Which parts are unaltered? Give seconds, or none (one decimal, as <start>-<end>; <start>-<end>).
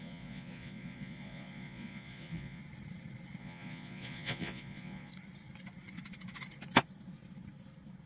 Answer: 2.6-3.4; 5.1-8.1